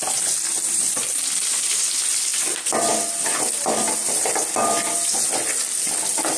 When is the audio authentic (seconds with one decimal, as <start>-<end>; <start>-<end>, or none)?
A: 0.0-6.4